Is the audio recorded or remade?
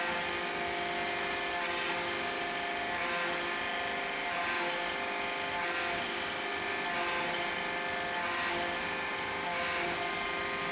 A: recorded